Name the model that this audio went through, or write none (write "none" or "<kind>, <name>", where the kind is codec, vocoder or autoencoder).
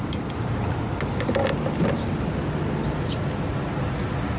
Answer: none